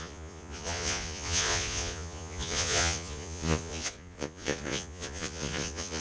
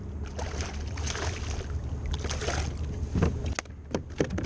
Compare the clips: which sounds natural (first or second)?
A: second